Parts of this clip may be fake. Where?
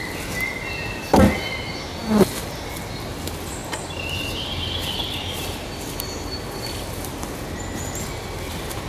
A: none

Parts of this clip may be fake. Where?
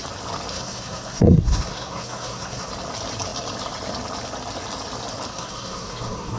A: 0.5-2.7 (codec, SNAC); 5.3-6.4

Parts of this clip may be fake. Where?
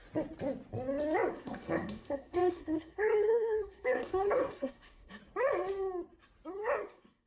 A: 1.3-5.2 (codec, SNAC); 6.6-7.3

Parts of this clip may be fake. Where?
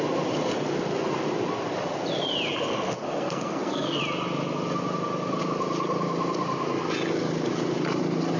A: 2.7-4.0 (codec, SNAC)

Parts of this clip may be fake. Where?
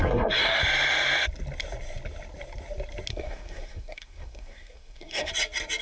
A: 0.0-0.6 (codec, SNAC); 3.1-5.3